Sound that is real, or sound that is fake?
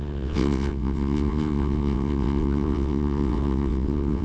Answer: fake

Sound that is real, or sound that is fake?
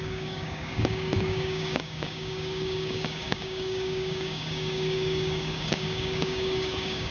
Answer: fake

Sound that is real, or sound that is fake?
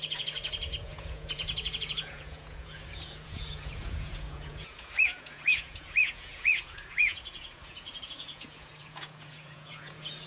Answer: fake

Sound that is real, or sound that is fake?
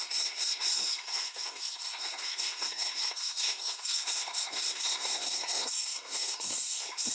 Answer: fake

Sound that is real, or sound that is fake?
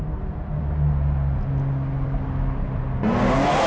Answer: real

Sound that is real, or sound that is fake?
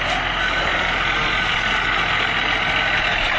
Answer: real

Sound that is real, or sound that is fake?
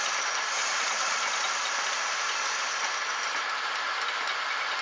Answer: real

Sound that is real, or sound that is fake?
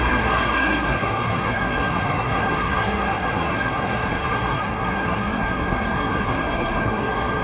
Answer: fake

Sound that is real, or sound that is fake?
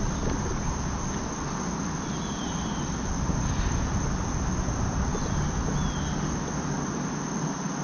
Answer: real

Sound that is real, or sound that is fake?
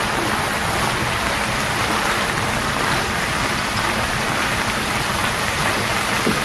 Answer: real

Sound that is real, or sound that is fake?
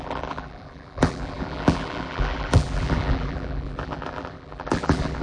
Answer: fake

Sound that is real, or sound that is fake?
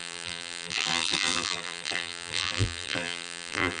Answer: fake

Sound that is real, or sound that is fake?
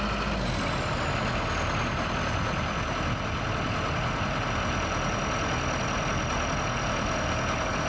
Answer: real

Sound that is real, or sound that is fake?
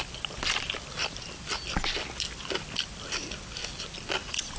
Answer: real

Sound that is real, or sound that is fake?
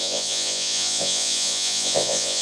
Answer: fake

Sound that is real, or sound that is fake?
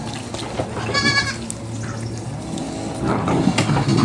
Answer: real